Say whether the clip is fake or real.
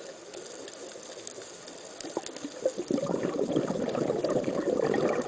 real